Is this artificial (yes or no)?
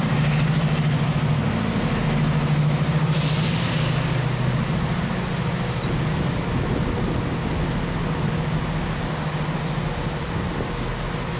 no